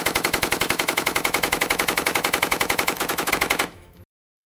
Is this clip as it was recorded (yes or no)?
no